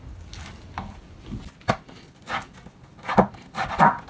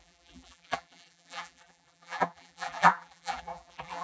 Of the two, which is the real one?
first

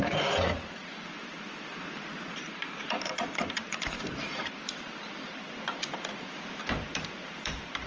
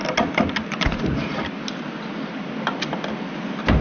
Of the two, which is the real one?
second